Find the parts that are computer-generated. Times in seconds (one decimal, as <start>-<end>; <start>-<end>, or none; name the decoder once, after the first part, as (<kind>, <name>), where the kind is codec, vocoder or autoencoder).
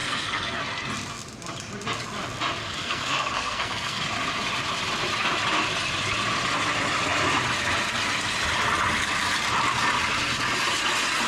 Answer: 0.0-0.6 (codec, SNAC); 2.6-4.0